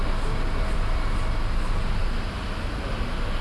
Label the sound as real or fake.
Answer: real